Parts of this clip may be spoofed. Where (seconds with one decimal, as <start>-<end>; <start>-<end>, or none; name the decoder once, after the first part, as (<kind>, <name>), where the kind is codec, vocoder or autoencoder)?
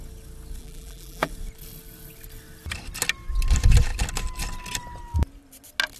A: 0.6-1.3 (vocoder, BigVGAN v2)